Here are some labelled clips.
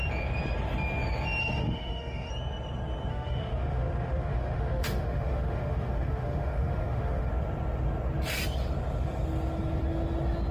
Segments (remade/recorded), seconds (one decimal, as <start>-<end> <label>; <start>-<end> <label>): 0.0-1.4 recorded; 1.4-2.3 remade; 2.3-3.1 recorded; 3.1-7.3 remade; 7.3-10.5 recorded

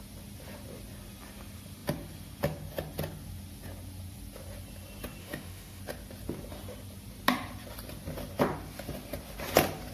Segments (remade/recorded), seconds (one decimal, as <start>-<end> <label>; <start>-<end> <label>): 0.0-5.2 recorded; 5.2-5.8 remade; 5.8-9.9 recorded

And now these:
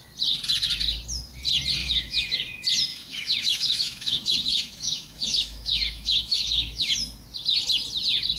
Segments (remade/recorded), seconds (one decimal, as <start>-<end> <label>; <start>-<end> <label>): 0.0-1.8 recorded; 1.8-2.4 remade; 2.4-2.9 recorded; 2.9-6.9 remade; 6.9-8.4 recorded

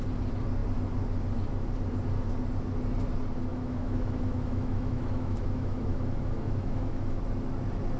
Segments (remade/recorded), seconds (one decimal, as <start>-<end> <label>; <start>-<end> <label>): 0.0-3.5 recorded; 3.5-7.2 remade; 7.2-8.0 recorded

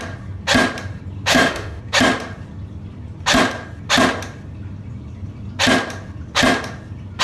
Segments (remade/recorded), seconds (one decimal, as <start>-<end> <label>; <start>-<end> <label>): 0.0-1.3 recorded; 1.3-1.8 remade; 1.8-7.2 recorded

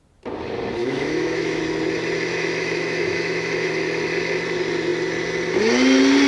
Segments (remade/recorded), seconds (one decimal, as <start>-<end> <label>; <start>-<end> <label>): 0.0-0.8 recorded; 0.8-1.6 remade; 1.6-2.3 recorded; 2.3-3.7 remade; 3.7-6.3 recorded